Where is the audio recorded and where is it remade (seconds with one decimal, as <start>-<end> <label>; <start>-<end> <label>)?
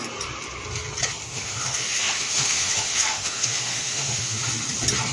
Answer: 0.0-1.3 recorded; 1.3-4.4 remade; 4.4-5.1 recorded